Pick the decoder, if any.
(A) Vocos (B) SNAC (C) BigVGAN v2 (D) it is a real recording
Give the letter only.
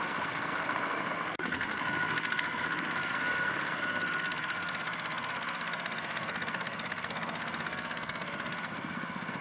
B